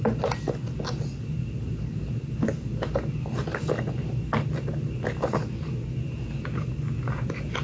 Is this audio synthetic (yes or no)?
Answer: no